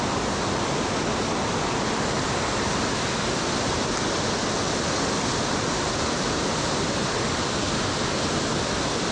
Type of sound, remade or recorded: recorded